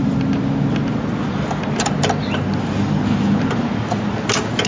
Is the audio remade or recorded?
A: recorded